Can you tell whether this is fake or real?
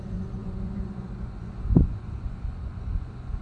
fake